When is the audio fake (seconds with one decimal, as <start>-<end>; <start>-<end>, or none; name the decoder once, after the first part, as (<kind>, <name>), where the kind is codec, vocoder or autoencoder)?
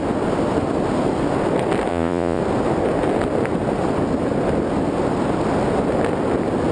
1.9-2.4 (vocoder, Vocos)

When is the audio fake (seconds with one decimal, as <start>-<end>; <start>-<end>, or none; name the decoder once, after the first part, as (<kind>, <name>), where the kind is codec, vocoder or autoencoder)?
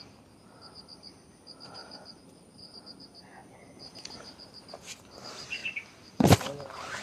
1.8-2.8 (vocoder, BigVGAN v2); 3.4-4.7